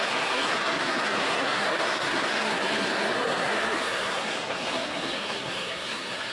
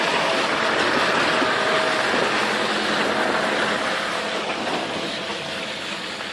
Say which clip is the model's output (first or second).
first